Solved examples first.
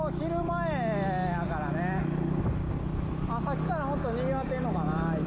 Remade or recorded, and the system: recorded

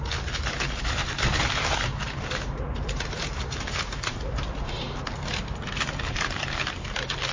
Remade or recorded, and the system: remade, vocoder, BigVGAN v2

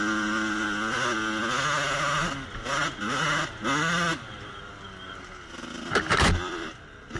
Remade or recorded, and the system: recorded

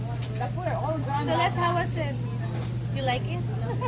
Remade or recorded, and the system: recorded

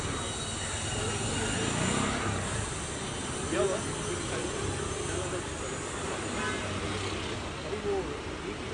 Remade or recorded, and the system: recorded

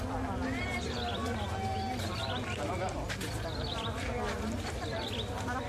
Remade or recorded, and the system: recorded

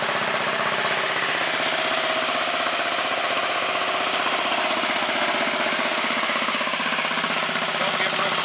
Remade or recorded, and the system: recorded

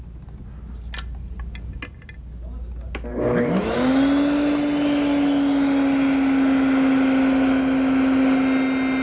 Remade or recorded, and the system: recorded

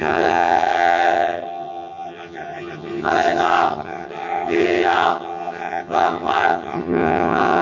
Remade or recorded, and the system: remade, vocoder, HiFi-GAN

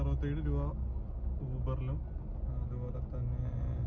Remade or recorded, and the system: recorded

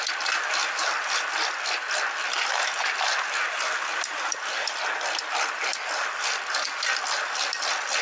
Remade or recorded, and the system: recorded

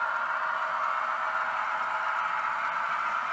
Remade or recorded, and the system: recorded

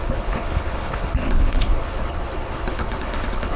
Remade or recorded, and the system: remade, codec, HILCodec